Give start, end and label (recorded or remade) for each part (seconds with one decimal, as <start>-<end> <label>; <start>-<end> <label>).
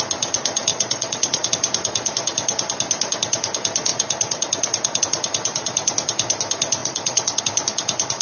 0.0-0.7 recorded; 0.7-1.5 remade; 1.5-6.8 recorded; 6.8-7.4 remade; 7.4-8.2 recorded